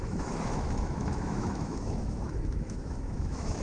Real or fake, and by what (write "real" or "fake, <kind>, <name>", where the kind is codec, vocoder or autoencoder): fake, autoencoder, DAC-VAE